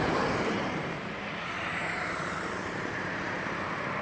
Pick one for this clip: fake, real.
fake